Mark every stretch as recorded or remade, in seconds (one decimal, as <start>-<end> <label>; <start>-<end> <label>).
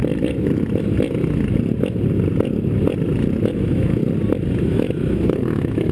0.0-3.5 recorded; 3.5-4.0 remade; 4.0-4.6 recorded; 4.6-5.9 remade